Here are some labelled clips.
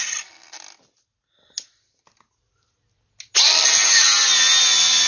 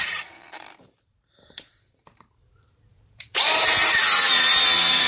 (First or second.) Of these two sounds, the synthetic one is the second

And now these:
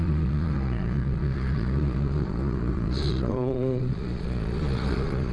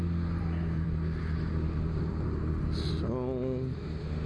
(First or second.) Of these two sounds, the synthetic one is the first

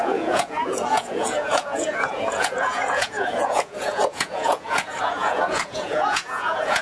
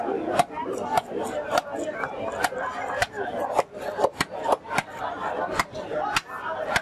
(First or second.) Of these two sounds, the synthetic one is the first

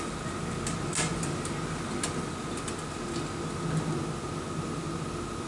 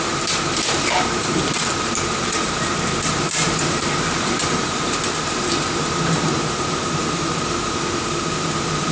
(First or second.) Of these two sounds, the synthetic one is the second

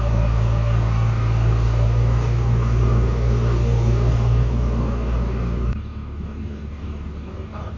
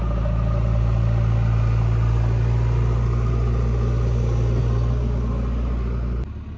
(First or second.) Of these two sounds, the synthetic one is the first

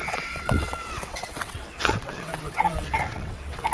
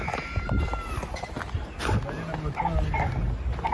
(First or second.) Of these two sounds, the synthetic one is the first